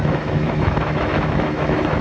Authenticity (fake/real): fake